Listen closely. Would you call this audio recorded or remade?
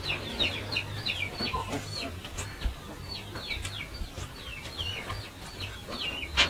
recorded